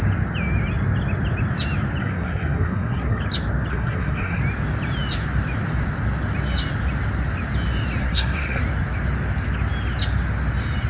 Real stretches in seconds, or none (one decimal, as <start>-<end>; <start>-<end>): 0.0-2.0; 3.2-3.7; 4.4-8.0; 8.6-10.9